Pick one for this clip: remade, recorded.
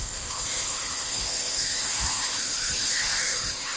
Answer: remade